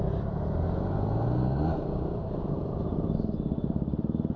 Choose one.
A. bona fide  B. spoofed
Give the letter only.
A